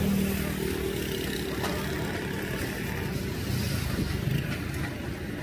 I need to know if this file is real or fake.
real